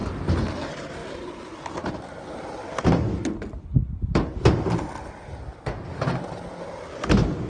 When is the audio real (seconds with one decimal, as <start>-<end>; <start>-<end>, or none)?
0.0-3.8; 4.7-7.5